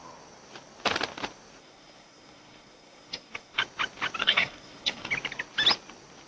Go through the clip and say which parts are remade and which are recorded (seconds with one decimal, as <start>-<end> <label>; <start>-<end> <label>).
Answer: 0.0-1.6 recorded; 1.6-3.6 remade; 3.6-4.2 recorded; 4.2-5.1 remade; 5.1-6.3 recorded